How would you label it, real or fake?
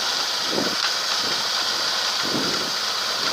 real